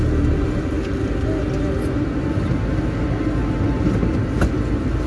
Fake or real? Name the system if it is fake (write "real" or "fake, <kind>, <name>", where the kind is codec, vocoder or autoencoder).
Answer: real